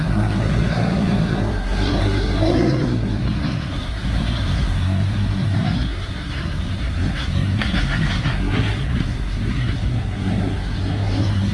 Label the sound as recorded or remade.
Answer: remade